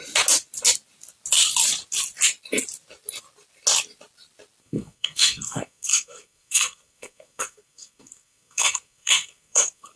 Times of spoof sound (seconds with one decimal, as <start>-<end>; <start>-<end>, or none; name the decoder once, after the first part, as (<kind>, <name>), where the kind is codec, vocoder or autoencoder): 4.6-10.0 (codec, SNAC)